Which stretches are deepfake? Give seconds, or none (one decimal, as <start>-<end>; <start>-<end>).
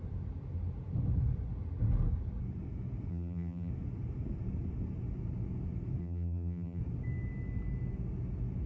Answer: 3.1-3.7; 6.0-6.8